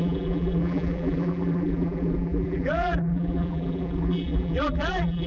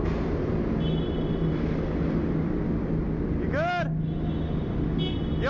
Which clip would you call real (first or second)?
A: second